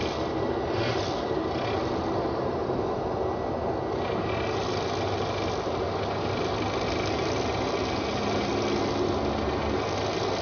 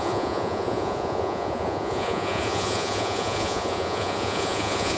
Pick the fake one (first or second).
second